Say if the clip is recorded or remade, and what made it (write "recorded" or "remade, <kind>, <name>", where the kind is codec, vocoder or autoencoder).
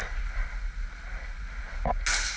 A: recorded